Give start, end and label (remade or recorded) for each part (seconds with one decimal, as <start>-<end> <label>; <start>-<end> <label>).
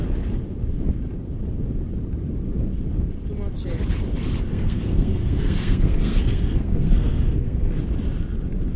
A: 0.0-4.5 recorded; 4.5-7.8 remade; 7.8-8.8 recorded